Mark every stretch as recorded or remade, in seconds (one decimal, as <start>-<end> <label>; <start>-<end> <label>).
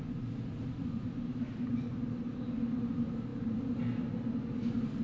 0.0-1.9 remade; 1.9-3.3 recorded; 3.3-3.8 remade; 3.8-5.0 recorded